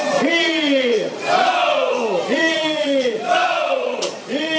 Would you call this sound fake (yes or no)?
yes